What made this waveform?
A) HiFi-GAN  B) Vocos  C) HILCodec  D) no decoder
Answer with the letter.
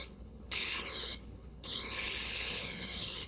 C